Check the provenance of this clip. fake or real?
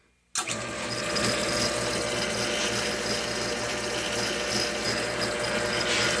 real